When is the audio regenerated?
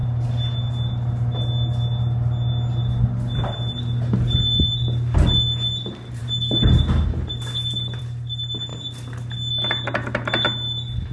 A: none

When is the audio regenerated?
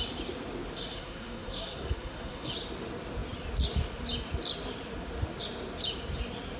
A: 0.9-2.5 (codec, SNAC)